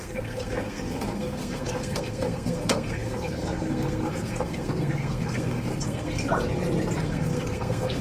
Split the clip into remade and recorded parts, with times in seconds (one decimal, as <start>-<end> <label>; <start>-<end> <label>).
0.0-6.3 remade; 6.3-7.0 recorded; 7.0-8.0 remade